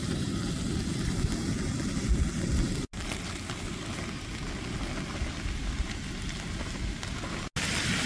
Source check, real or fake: real